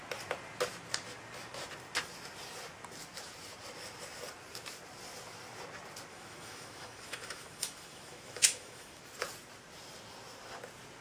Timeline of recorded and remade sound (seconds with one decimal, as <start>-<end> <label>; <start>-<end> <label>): 0.0-6.1 recorded; 6.1-9.0 remade; 9.0-11.0 recorded